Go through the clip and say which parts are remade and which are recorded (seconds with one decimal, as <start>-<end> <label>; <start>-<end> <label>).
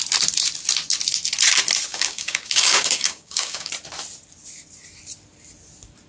0.0-1.9 recorded; 1.9-3.7 remade; 3.7-6.1 recorded